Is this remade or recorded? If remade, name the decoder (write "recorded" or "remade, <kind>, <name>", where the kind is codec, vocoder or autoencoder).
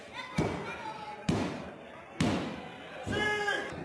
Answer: recorded